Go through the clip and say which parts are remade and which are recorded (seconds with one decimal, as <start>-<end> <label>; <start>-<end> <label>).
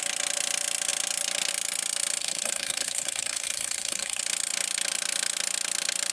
0.0-2.2 recorded; 2.2-4.2 remade; 4.2-6.1 recorded